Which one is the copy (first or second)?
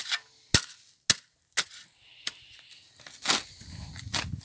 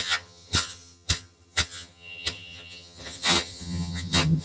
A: second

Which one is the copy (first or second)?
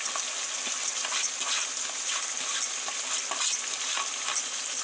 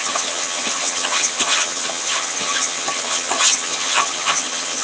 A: second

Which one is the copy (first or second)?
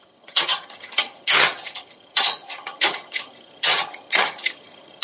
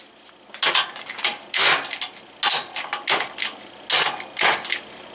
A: first